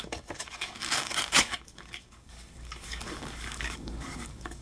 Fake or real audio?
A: fake